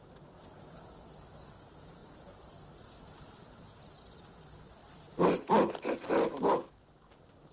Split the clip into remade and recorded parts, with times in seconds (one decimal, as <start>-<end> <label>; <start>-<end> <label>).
0.0-2.0 recorded; 2.0-3.1 remade; 3.1-7.5 recorded